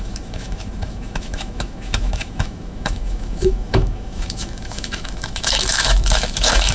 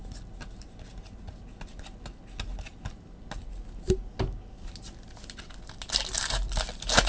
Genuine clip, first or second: second